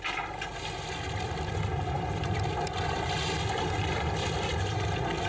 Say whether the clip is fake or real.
real